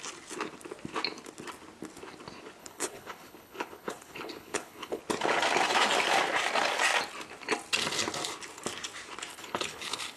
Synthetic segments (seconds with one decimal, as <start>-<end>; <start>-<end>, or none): 2.6-5.0; 9.3-10.2